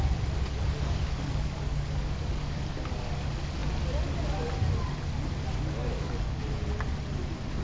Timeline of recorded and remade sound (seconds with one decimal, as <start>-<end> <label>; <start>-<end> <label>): 0.0-0.4 recorded; 0.4-2.9 remade; 2.9-5.8 recorded; 5.8-6.4 remade; 6.4-7.6 recorded